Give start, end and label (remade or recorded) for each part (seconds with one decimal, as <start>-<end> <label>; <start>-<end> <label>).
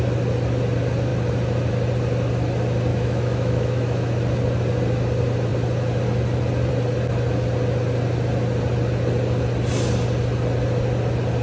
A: 0.0-2.9 recorded; 2.9-4.2 remade; 4.2-11.4 recorded